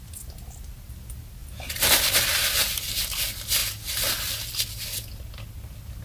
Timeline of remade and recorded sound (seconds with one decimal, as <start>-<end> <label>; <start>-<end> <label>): 0.0-1.4 recorded; 1.4-2.1 remade; 2.1-6.0 recorded